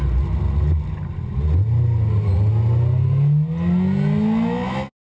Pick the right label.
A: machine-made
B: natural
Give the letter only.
B